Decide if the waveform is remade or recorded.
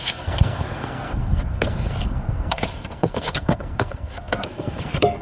remade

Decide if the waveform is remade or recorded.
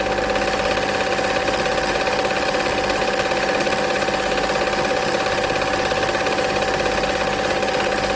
recorded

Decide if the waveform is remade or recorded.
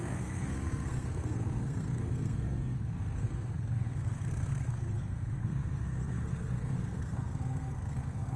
remade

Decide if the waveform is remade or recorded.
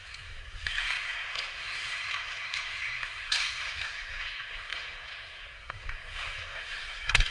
remade